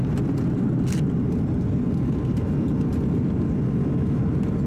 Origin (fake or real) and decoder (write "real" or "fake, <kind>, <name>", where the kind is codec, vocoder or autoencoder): real